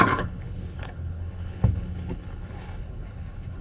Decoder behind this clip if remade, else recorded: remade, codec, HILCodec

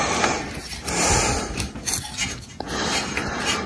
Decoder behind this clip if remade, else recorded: recorded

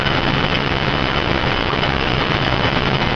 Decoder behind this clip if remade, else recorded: remade, vocoder, WaveNeXt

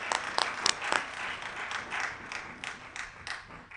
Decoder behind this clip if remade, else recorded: recorded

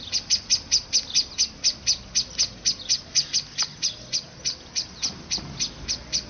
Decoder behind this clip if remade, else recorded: recorded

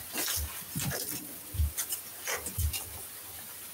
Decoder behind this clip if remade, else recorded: recorded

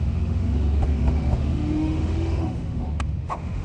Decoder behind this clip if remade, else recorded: remade, autoencoder, DAC-VAE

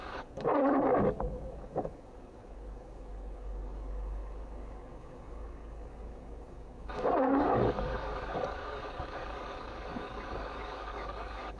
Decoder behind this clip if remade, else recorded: remade, codec, DAC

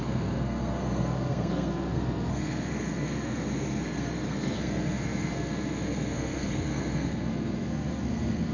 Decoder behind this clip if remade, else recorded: remade, codec, SNAC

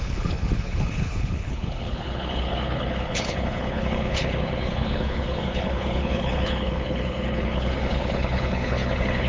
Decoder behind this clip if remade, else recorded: remade, codec, HILCodec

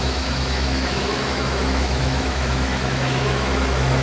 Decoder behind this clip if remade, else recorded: remade, autoencoder, DAC-VAE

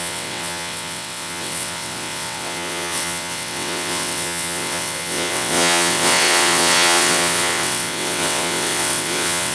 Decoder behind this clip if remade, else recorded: remade, vocoder, WaveNeXt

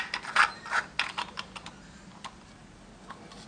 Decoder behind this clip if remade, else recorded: recorded